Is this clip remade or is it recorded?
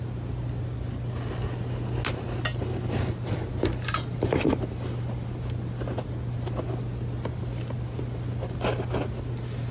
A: recorded